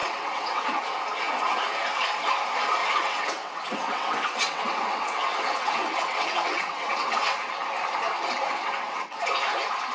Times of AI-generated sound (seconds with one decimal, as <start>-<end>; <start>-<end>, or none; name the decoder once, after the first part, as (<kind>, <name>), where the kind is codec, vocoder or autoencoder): 0.0-0.8 (vocoder, WaveNeXt); 2.8-7.5; 8.4-9.2